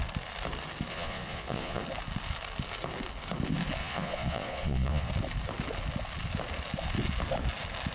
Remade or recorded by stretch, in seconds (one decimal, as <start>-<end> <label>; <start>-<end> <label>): 0.0-0.9 recorded; 0.9-1.8 remade; 1.8-3.8 recorded; 3.8-5.1 remade; 5.1-7.9 recorded